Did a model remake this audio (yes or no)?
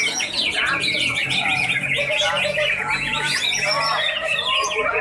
yes